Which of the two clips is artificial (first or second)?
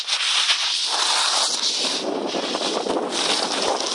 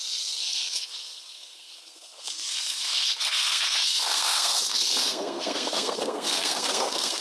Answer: second